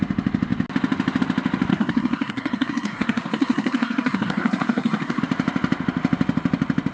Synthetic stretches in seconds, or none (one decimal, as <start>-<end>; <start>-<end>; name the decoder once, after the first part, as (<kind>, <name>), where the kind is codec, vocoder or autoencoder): 1.7-5.2 (codec, SNAC)